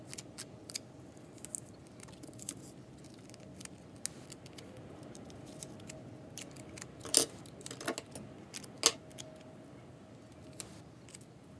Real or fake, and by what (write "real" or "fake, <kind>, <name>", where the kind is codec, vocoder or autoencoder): real